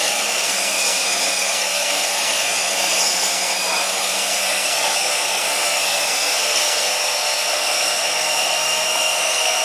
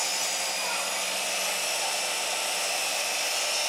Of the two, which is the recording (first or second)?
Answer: second